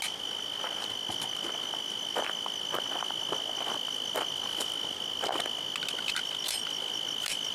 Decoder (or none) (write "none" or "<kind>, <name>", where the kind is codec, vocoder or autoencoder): none